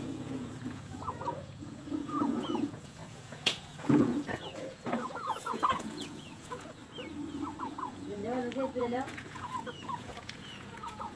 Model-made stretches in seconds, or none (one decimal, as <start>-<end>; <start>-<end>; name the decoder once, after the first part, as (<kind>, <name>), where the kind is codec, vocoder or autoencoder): 0.0-6.8 (vocoder, Vocos); 7.6-8.2; 8.8-11.2